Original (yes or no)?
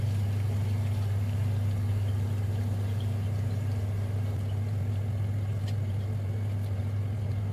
yes